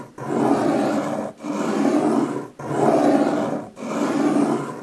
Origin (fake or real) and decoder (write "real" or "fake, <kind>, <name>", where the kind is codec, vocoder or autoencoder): real